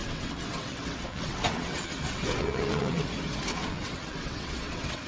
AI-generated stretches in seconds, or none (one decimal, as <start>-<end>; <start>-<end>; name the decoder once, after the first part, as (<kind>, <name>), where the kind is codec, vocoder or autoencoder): 0.0-3.1 (vocoder, WaveNeXt); 3.5-5.1